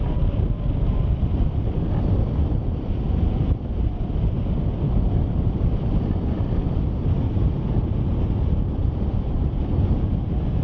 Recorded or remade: remade